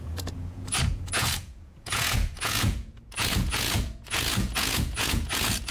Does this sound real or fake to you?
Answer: fake